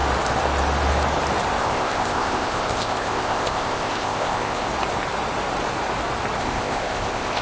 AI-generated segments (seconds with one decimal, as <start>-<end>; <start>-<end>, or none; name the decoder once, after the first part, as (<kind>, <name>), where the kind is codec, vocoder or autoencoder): 1.6-4.7 (codec, ZipCodec); 6.4-7.4